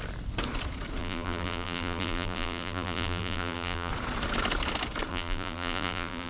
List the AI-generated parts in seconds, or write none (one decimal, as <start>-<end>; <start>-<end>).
1.0-3.9; 5.1-6.3